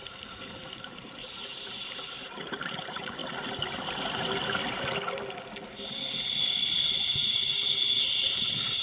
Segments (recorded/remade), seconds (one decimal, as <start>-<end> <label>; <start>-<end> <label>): 0.0-3.2 remade; 3.2-6.9 recorded; 6.9-8.8 remade